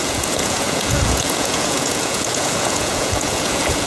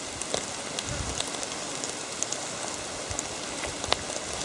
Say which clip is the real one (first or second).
second